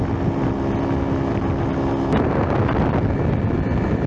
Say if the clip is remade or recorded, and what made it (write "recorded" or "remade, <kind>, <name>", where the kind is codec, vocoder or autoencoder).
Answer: recorded